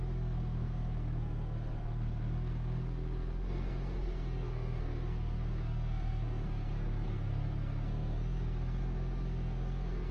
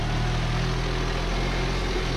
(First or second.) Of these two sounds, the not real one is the first